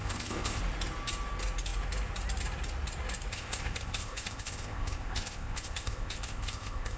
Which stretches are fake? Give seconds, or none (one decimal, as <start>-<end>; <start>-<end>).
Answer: 0.0-0.6; 3.3-7.0